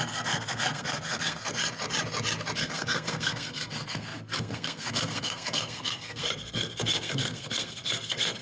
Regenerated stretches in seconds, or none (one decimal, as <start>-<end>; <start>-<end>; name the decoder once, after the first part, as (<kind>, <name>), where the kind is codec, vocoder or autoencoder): 0.0-1.6 (codec, SNAC); 2.6-8.4

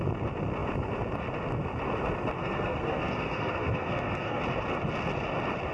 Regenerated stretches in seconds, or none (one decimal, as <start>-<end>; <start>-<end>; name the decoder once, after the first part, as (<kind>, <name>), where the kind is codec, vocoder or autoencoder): 2.4-4.4 (codec, SNAC)

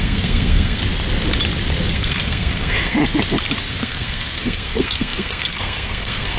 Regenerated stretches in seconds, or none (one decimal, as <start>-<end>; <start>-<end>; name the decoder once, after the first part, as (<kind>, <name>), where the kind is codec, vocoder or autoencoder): 0.0-0.8 (codec, SNAC); 1.9-3.0; 3.7-6.4

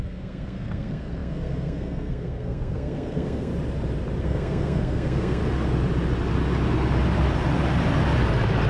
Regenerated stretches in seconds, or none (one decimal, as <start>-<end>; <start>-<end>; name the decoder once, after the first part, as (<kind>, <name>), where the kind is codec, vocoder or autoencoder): 0.0-3.5 (codec, SNAC); 4.2-5.4